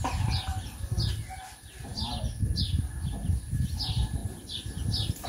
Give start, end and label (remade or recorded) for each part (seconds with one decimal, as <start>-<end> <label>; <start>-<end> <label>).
0.0-5.3 recorded